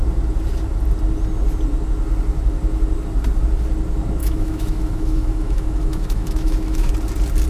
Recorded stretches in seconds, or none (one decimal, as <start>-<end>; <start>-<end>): 0.0-4.2; 6.9-7.5